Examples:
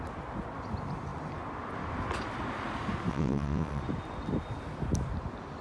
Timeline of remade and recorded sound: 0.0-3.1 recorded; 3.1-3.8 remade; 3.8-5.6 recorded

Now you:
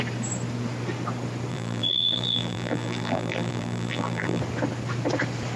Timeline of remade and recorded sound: 0.0-1.5 recorded; 1.5-4.4 remade; 4.4-5.6 recorded

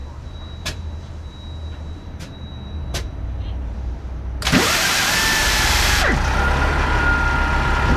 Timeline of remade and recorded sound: 0.0-1.1 remade; 1.1-1.6 recorded; 1.6-6.4 remade; 6.4-8.0 recorded

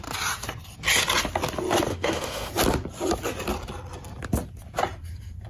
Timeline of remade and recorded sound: 0.0-1.9 recorded; 1.9-2.5 remade; 2.5-5.5 recorded

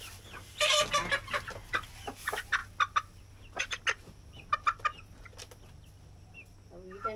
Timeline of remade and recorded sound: 0.0-7.2 recorded